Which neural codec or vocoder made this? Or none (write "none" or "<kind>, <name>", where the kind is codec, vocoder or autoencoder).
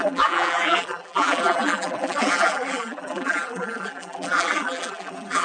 vocoder, BigVGAN v2